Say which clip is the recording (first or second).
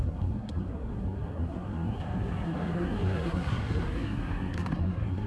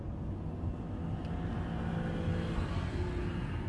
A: second